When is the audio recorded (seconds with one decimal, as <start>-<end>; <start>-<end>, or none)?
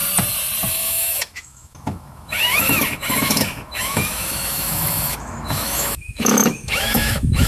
0.0-0.7